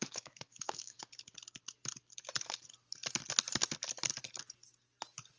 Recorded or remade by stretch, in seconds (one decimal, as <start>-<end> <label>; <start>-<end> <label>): 0.0-1.0 remade; 1.0-5.4 recorded